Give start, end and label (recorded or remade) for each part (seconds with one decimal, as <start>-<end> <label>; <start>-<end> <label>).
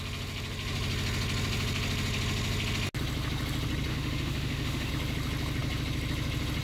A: 0.0-3.9 recorded; 3.9-4.9 remade; 4.9-6.6 recorded